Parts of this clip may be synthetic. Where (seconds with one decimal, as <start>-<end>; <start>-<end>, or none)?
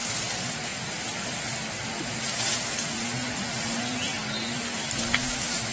none